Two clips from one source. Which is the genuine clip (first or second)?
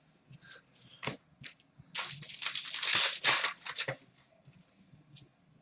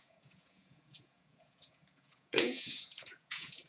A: first